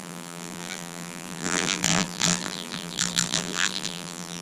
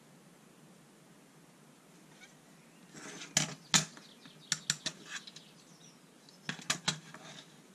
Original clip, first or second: second